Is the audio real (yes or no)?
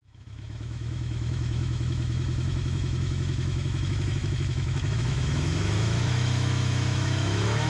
no